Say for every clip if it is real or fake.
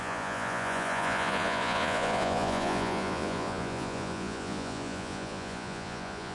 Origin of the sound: fake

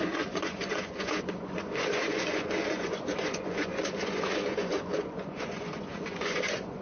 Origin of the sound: fake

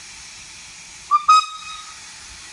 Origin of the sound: real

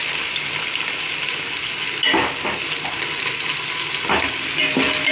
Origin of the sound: real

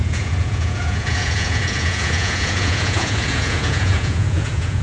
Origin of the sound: fake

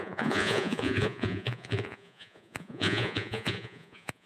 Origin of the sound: fake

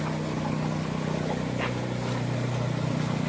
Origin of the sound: real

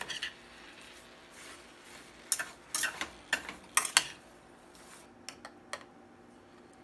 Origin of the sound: real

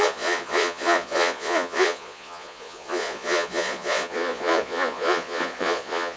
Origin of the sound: fake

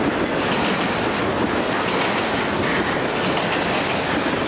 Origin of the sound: real